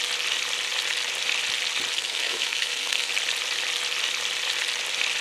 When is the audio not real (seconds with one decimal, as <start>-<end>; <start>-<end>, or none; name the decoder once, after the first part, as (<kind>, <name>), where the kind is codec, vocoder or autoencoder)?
1.9-3.1 (codec, SNAC)